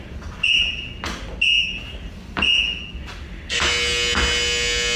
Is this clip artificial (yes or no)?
no